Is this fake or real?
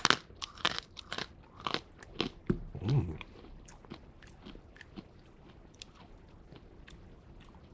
real